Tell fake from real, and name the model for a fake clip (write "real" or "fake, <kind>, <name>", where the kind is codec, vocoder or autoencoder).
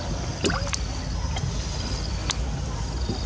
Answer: real